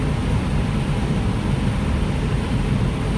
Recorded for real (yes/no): yes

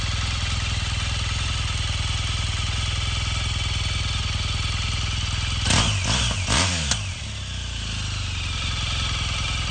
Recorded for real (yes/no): yes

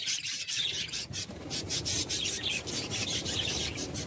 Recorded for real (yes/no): no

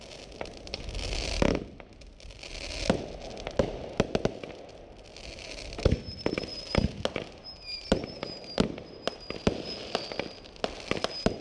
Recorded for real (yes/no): yes